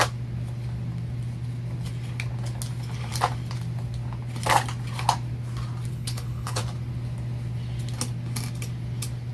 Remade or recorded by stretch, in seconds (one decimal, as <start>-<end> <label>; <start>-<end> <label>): 0.0-5.9 recorded; 5.9-6.6 remade; 6.6-9.3 recorded